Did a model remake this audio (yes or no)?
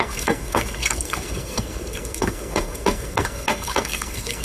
yes